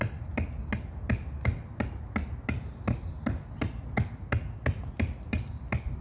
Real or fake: real